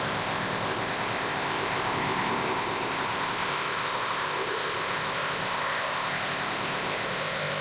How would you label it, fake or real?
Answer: fake